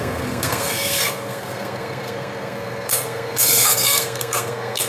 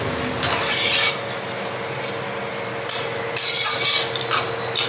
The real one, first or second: second